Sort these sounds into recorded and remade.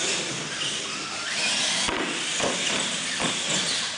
recorded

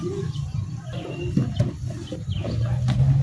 recorded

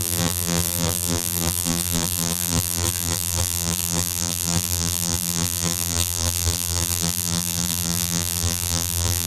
remade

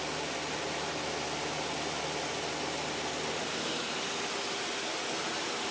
recorded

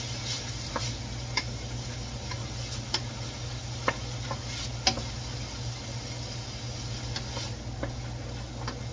recorded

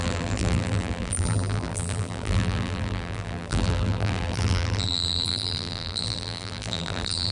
remade